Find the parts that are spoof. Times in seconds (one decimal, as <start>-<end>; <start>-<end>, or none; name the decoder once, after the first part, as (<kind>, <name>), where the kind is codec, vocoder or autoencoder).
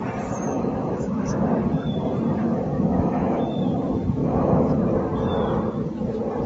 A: 0.5-1.5 (autoencoder, DAC-VAE); 2.4-3.5; 4.2-4.8